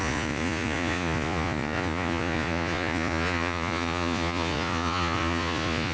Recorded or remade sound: remade